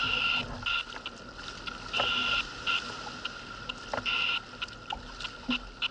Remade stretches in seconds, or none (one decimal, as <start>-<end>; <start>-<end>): none